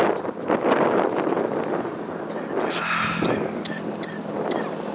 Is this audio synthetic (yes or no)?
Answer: no